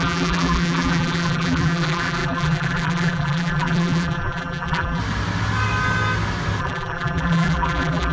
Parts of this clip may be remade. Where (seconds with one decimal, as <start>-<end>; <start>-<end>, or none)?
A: 0.0-5.0; 6.6-8.1

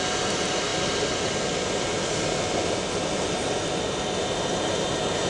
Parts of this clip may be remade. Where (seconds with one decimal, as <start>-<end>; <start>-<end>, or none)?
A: none

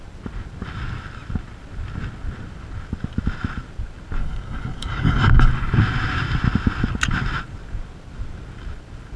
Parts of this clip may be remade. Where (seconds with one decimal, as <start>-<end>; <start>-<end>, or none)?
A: 4.2-5.5

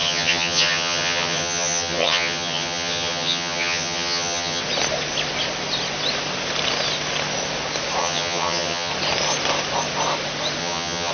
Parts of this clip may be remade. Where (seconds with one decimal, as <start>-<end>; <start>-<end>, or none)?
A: 0.0-4.6; 8.0-8.9; 10.6-11.1

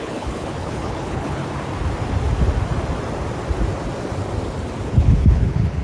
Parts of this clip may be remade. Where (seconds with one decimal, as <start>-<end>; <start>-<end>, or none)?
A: 0.0-1.4; 4.9-5.8

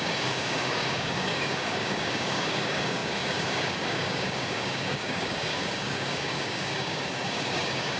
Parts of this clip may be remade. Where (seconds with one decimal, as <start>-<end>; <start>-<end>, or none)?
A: 0.0-8.0

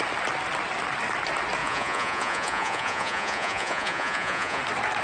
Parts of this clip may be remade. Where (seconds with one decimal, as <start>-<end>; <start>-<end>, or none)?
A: 1.6-4.6

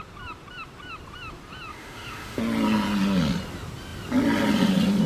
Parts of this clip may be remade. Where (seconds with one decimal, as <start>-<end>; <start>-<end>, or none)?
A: 1.7-2.4